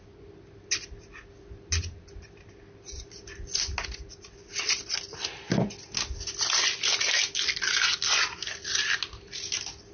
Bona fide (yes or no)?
yes